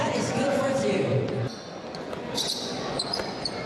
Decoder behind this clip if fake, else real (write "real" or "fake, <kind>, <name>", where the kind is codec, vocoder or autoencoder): fake, vocoder, Vocos